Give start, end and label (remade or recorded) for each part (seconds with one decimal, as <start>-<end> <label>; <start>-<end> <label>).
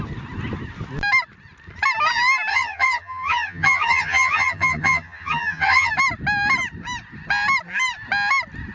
0.0-2.5 recorded; 2.5-5.9 remade; 5.9-8.7 recorded